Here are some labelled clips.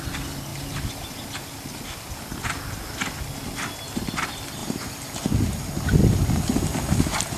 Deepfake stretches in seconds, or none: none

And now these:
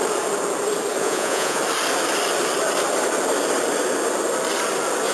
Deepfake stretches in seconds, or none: 1.0-1.6 (vocoder, Vocos)

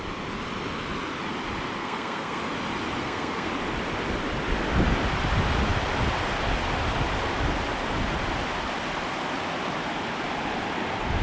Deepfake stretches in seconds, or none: 1.8-2.4 (codec, SNAC); 3.0-3.5

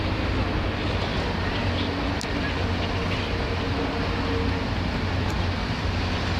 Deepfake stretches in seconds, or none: none

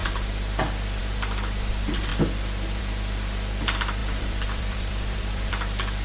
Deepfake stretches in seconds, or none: 4.0-5.5 (vocoder, BigVGAN v2)

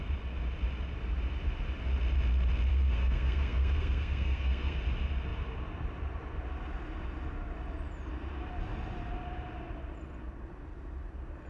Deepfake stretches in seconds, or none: 2.7-4.8 (codec, SNAC)

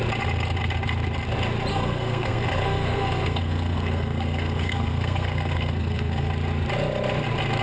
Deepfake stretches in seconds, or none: 1.7-6.3 (codec, SNAC)